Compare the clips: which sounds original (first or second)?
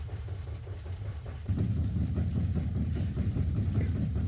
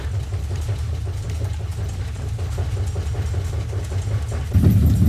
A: second